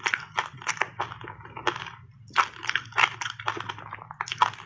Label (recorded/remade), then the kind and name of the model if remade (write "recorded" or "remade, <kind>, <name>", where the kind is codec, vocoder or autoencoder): recorded